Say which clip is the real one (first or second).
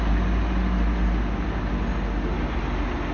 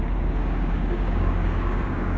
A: first